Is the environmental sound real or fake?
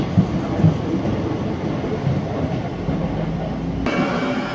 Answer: real